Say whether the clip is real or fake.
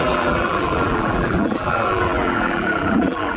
fake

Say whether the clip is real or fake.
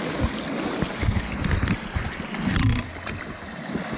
real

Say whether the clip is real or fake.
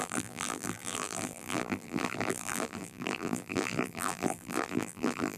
fake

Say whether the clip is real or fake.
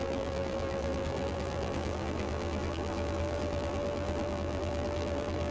fake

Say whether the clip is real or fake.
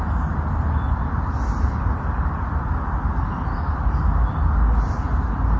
real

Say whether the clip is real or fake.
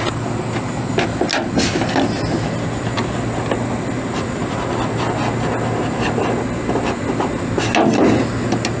real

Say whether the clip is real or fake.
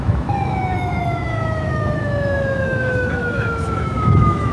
fake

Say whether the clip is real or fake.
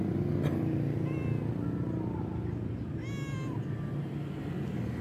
real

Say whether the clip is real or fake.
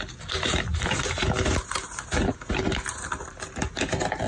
real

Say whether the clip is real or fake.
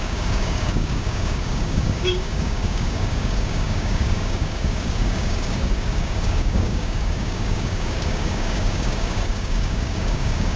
fake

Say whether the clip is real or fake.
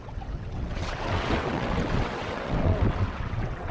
fake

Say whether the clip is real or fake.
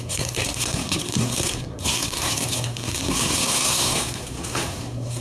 fake